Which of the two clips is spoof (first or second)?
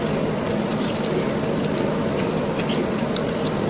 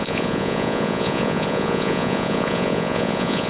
second